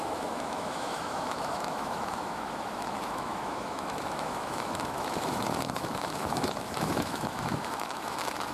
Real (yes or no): no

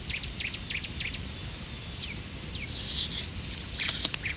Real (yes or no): yes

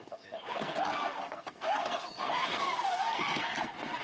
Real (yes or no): no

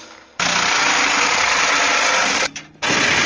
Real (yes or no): yes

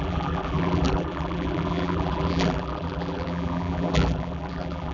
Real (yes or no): no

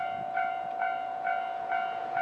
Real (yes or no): no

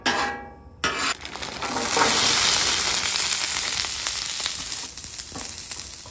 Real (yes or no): yes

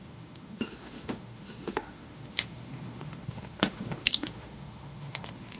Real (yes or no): no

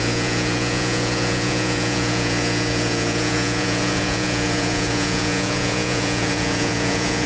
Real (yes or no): no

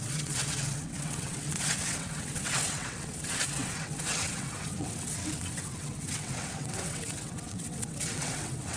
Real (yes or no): no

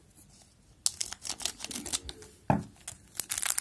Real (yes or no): yes